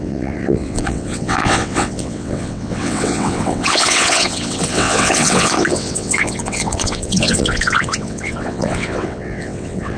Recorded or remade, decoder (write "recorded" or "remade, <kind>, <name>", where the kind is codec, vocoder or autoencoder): remade, vocoder, WaveNeXt